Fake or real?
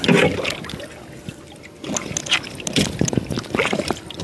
real